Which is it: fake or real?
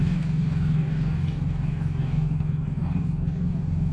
fake